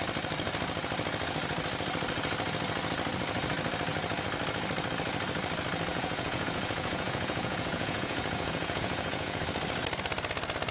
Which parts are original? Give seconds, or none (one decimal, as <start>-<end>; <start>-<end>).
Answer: 0.0-5.9; 9.4-10.7